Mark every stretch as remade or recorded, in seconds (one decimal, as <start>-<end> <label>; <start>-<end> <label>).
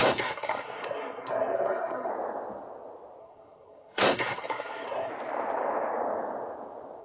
0.0-2.1 remade; 2.1-3.2 recorded; 3.2-5.1 remade; 5.1-7.0 recorded